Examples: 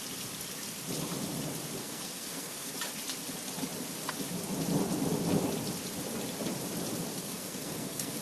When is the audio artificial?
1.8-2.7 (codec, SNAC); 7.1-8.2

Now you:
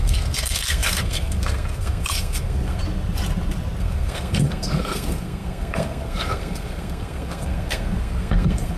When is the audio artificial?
0.0-2.8 (codec, SNAC); 3.8-8.8

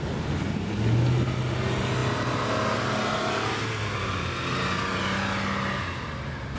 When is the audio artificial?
none

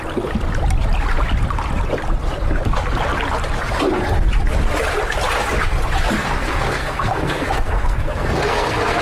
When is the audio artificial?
6.2-9.0 (codec, SNAC)

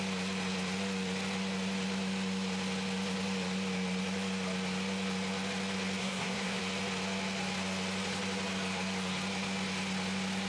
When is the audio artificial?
6.0-6.6 (codec, SNAC)

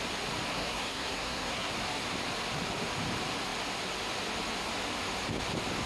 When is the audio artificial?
0.5-1.7 (codec, SNAC)